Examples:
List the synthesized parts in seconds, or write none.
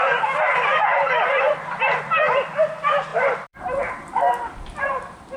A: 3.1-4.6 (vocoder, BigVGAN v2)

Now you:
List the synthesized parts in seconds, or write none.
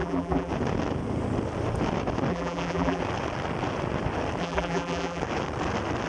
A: 0.0-0.5 (vocoder, BigVGAN v2); 2.3-3.0; 4.4-5.2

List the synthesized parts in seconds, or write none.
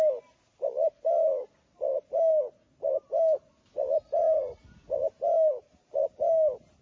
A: none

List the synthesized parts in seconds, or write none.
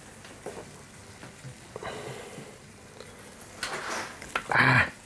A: none